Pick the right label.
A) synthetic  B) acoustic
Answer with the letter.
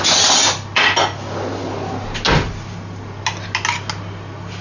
B